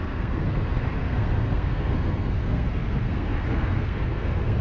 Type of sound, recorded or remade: remade